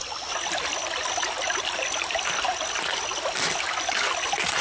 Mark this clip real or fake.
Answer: real